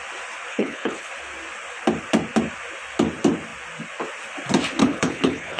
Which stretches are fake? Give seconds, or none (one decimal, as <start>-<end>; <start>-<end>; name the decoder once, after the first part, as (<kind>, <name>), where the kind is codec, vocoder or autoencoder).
0.5-1.1 (codec, HILCodec); 4.8-5.6

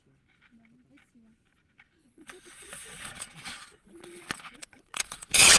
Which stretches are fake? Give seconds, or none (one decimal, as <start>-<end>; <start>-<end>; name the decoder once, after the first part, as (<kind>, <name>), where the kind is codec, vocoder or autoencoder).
2.0-5.6 (vocoder, Vocos)